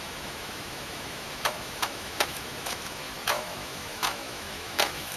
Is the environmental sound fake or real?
fake